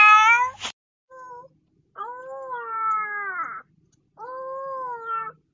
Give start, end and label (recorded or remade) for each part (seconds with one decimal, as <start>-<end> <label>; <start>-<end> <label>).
0.0-5.5 recorded